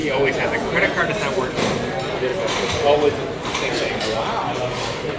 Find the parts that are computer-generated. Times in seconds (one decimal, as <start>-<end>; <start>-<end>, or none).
0.0-1.0